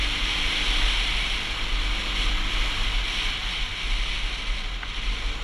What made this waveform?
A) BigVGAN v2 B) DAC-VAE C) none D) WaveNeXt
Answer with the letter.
C